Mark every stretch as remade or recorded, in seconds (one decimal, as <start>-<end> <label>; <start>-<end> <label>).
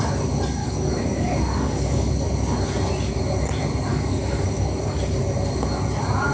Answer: 0.0-0.6 recorded; 0.6-2.1 remade; 2.1-3.9 recorded; 3.9-5.2 remade; 5.2-6.3 recorded